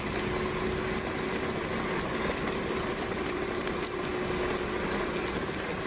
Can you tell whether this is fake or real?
real